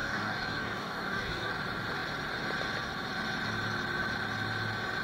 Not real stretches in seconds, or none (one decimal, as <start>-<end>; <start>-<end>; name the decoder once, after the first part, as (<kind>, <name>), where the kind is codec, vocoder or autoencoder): 0.0-1.5 (codec, DAC)